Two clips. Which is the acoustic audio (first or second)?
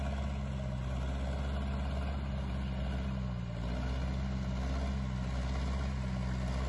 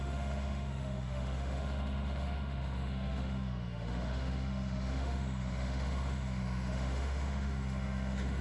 first